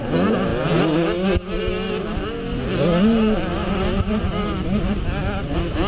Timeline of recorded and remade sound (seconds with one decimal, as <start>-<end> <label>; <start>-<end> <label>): 0.0-5.9 recorded